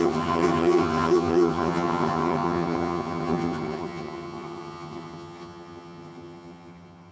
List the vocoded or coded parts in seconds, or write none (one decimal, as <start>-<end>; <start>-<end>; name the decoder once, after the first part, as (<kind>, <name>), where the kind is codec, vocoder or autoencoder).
0.0-7.1 (vocoder, HiFi-GAN)